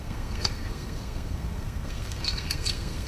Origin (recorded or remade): remade